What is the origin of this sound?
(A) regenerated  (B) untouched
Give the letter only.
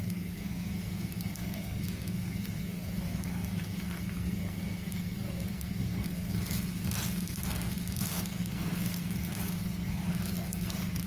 A